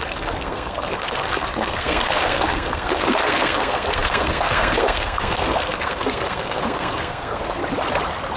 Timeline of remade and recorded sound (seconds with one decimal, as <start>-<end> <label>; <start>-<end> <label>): 0.0-7.6 remade; 7.6-8.4 recorded

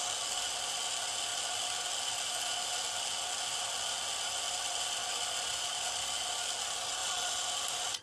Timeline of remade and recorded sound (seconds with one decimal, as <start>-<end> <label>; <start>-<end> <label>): 0.0-8.0 recorded

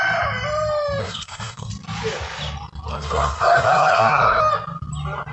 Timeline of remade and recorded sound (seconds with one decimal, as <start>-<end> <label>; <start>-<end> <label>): 0.0-1.0 recorded; 1.0-1.7 remade; 1.7-2.9 recorded; 2.9-4.4 remade; 4.4-5.3 recorded

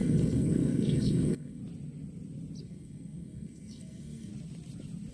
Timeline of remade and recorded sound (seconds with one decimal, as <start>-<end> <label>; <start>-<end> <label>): 0.0-1.6 remade; 1.6-2.6 recorded; 2.6-4.3 remade; 4.3-5.1 recorded